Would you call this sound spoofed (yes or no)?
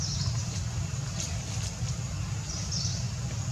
no